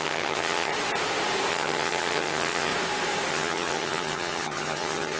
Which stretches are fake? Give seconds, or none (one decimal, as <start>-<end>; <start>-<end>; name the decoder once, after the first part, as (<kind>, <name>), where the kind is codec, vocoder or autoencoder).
0.0-0.7 (vocoder, HiFi-GAN); 1.5-2.7; 3.3-5.2